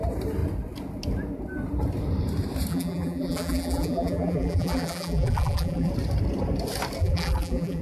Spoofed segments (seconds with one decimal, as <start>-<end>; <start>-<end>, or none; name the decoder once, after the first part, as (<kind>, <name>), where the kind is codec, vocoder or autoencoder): 2.7-5.9 (vocoder, BigVGAN v2); 7.0-7.8